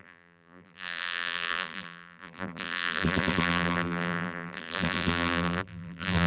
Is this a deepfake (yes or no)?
yes